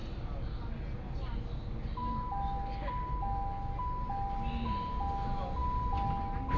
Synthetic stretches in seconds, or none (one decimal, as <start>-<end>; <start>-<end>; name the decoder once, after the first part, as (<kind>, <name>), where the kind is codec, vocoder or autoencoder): none